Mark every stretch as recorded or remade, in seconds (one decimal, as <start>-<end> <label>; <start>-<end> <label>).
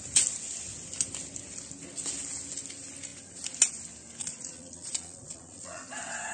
0.0-4.2 recorded; 4.2-5.8 remade; 5.8-6.3 recorded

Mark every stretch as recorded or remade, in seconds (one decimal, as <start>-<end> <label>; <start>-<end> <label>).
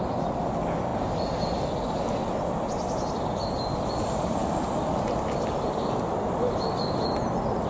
0.0-7.7 recorded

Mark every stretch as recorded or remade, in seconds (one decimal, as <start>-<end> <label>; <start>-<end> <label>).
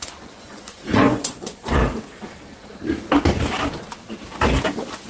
0.0-1.8 remade; 1.8-5.1 recorded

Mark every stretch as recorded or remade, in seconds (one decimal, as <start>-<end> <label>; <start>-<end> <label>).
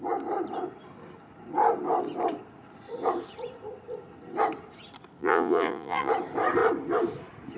0.0-5.2 recorded; 5.2-6.1 remade; 6.1-7.6 recorded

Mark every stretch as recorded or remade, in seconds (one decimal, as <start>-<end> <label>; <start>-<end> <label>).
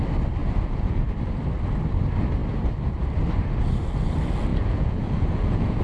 0.0-0.4 recorded; 0.4-1.1 remade; 1.1-4.5 recorded; 4.5-5.8 remade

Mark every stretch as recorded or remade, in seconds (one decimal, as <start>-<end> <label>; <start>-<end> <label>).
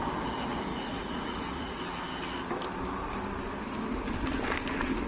0.0-0.7 recorded; 0.7-1.8 remade; 1.8-5.1 recorded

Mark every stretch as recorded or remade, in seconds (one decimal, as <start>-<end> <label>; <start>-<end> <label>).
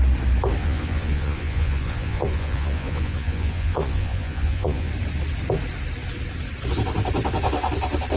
0.0-0.6 recorded; 0.6-4.9 remade; 4.9-8.2 recorded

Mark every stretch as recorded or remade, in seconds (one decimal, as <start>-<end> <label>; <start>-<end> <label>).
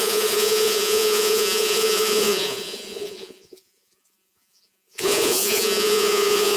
0.0-6.6 remade